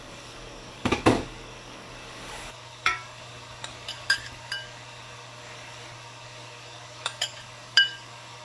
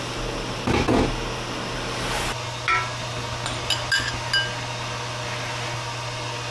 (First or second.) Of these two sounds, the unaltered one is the second